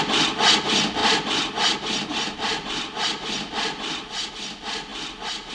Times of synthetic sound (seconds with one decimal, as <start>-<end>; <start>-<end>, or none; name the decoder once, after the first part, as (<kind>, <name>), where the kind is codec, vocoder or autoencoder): 1.0-4.3 (vocoder, BigVGAN v2)